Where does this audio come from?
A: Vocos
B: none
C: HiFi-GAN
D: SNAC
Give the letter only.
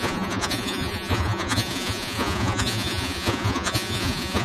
A